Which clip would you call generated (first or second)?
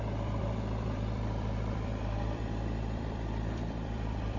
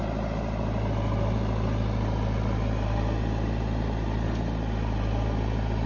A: first